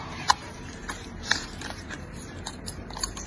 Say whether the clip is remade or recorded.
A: remade